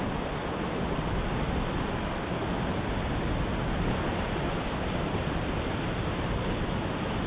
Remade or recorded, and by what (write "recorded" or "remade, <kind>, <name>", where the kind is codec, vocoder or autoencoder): recorded